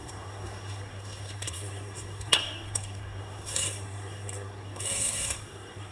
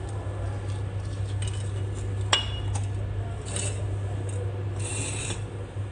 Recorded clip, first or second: second